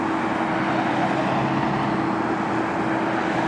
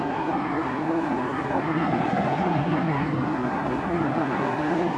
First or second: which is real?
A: first